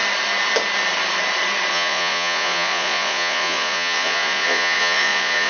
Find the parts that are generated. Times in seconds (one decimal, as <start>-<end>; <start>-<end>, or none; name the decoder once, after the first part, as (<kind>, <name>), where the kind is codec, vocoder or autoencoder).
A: 1.7-5.5 (vocoder, Vocos)